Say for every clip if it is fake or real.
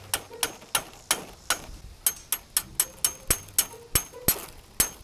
real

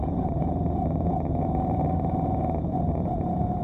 fake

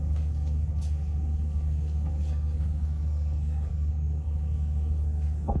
fake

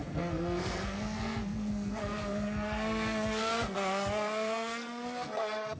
fake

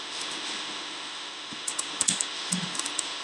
fake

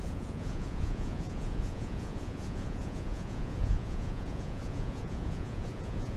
fake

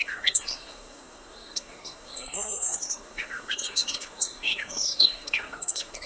fake